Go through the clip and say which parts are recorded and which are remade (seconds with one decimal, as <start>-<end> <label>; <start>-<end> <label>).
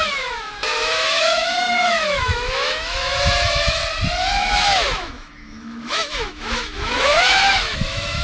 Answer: 0.0-3.8 remade; 3.8-4.3 recorded; 4.3-8.2 remade